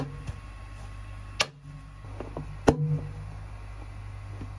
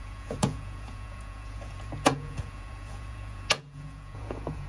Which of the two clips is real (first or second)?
first